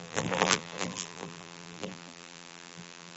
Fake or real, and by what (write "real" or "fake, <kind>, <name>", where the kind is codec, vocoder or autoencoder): fake, vocoder, BigVGAN v2